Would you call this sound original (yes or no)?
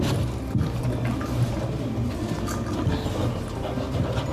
yes